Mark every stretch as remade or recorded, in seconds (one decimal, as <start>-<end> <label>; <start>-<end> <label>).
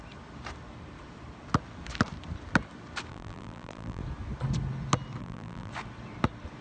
0.0-3.1 recorded; 3.1-4.0 remade; 4.0-5.2 recorded; 5.2-5.7 remade; 5.7-6.6 recorded